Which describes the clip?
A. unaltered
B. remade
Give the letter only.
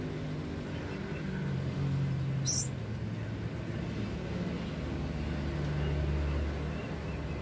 A